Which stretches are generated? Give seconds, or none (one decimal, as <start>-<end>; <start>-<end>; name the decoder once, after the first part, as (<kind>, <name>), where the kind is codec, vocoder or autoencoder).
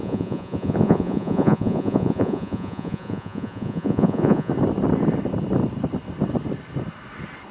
0.0-4.5 (vocoder, Vocos)